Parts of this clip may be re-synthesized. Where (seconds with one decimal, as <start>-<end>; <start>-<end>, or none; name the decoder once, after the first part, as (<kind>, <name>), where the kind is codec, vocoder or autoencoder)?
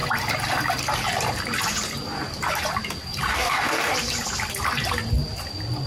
3.3-3.9 (codec, DAC)